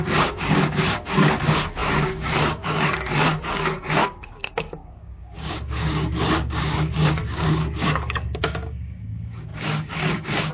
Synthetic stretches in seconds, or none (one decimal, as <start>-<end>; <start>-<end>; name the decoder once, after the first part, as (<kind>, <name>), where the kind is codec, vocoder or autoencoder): 0.0-10.5 (codec, DAC)